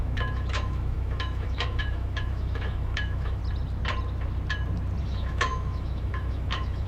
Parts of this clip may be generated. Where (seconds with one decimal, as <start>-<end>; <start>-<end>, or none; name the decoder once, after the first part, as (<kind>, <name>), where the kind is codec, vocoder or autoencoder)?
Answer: 0.0-3.4 (autoencoder, DAC-VAE); 5.0-6.9